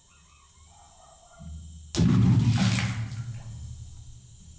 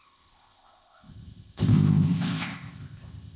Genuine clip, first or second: first